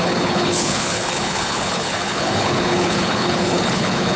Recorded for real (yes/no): no